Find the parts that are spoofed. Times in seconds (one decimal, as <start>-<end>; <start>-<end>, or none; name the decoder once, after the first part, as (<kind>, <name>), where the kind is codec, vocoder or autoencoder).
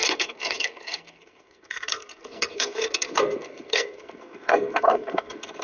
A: 0.0-5.6 (codec, SNAC)